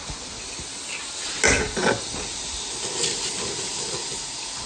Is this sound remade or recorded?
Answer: recorded